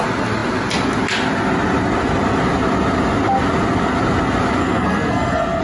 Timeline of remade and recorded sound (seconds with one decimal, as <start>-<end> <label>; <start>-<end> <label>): 0.0-4.6 recorded; 4.6-5.6 remade